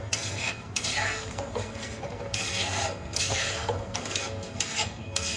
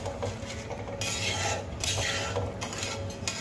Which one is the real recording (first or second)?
second